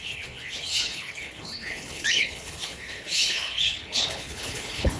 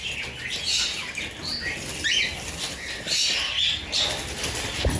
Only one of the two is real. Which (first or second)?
second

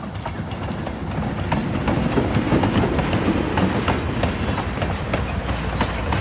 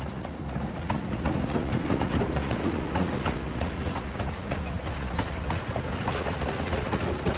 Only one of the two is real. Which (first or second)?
first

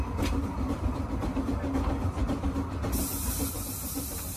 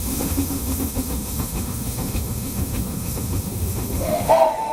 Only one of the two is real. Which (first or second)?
first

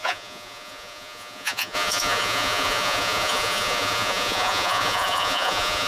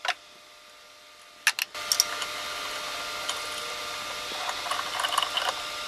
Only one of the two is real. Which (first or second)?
second